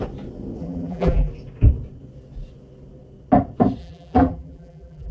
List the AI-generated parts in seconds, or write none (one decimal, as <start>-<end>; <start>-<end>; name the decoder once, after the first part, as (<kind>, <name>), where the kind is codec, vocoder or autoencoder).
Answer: 0.6-1.3 (vocoder, BigVGAN v2); 3.8-5.1